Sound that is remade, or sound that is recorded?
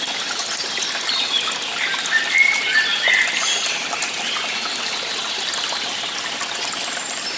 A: recorded